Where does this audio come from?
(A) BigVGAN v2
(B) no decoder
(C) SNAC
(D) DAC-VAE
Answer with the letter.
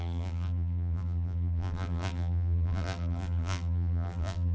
A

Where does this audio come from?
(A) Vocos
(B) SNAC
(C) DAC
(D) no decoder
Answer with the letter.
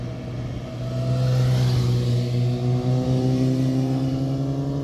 D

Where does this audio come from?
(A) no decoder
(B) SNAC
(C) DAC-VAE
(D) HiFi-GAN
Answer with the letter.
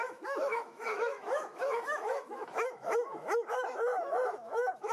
C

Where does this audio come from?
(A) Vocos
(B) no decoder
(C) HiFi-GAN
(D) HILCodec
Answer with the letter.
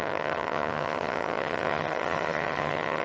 C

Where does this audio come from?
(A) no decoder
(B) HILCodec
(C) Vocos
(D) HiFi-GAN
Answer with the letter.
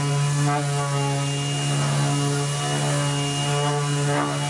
A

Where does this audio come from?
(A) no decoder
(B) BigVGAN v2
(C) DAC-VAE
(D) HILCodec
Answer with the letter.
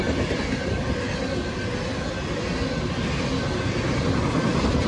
A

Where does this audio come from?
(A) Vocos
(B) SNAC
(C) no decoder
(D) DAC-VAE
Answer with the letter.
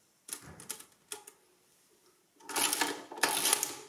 C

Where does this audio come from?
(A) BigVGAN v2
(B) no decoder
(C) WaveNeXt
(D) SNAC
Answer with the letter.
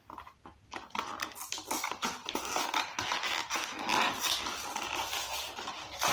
B